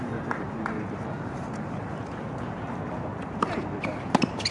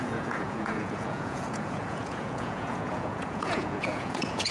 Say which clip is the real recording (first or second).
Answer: first